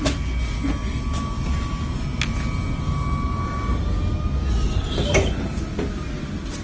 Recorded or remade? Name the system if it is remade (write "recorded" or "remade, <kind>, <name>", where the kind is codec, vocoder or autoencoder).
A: recorded